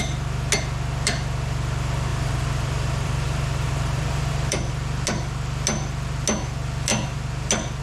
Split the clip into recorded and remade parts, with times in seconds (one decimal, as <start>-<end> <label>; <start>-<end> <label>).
0.0-2.1 recorded; 2.1-4.7 remade; 4.7-7.8 recorded